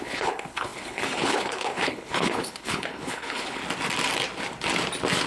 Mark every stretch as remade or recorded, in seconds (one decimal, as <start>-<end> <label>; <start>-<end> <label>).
0.0-3.6 remade; 3.6-5.3 recorded